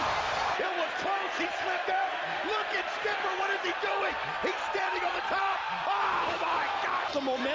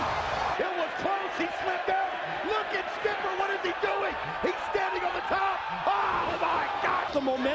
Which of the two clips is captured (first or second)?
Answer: second